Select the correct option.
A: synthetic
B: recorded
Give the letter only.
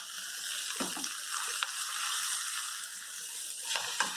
B